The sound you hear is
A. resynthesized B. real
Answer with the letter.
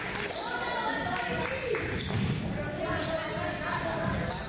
B